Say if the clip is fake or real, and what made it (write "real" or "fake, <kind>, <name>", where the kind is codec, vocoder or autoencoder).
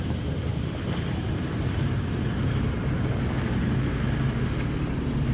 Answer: fake, vocoder, BigVGAN v2